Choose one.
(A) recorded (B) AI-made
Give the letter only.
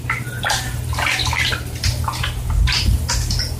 A